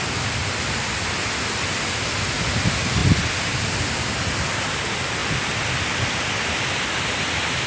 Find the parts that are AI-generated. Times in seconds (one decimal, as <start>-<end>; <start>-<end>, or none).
none